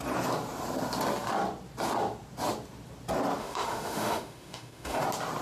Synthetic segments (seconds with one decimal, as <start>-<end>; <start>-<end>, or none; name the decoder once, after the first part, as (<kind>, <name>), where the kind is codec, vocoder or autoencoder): 3.4-5.0 (autoencoder, DAC-VAE)